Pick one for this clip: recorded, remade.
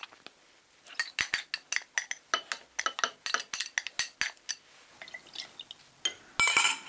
recorded